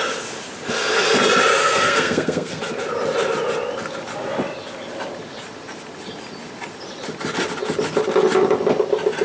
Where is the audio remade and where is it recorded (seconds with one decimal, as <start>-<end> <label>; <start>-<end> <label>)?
0.0-1.6 recorded; 1.6-2.6 remade; 2.6-9.2 recorded